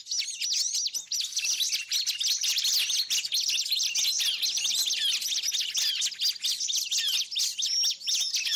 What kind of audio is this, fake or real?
real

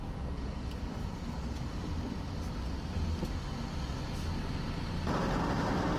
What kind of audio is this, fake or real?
real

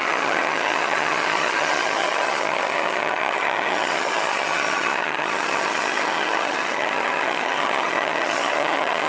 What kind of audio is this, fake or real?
fake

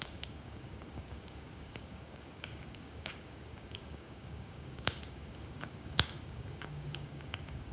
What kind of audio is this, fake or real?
fake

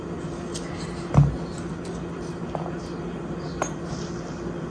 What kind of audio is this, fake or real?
real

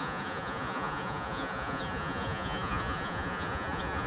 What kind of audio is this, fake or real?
fake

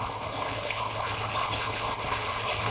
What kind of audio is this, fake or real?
fake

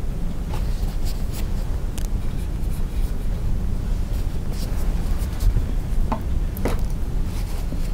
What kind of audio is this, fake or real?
real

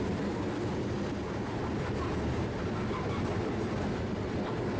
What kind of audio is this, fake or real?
real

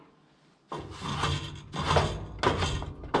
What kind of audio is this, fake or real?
real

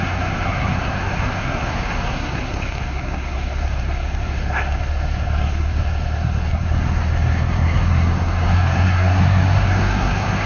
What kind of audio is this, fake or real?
fake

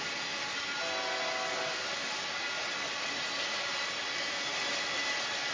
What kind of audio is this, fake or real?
real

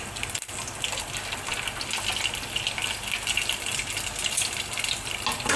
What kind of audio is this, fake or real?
real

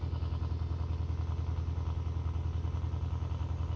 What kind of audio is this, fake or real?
real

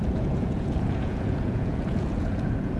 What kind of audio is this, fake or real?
fake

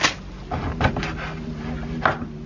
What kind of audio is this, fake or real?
real